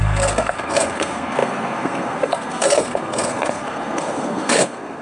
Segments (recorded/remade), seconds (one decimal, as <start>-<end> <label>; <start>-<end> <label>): 0.0-5.0 remade